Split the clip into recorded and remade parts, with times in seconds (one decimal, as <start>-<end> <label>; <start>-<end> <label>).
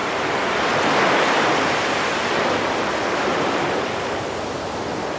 0.0-3.1 recorded; 3.1-5.2 remade